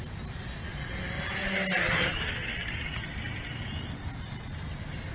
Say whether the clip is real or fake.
real